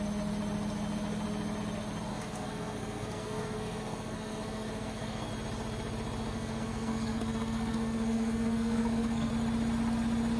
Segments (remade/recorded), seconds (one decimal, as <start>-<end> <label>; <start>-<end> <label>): 0.0-2.1 recorded; 2.1-5.3 remade; 5.3-6.3 recorded; 6.3-9.3 remade; 9.3-10.4 recorded